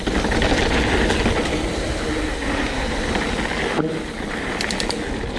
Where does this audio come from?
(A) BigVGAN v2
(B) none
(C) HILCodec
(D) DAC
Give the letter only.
B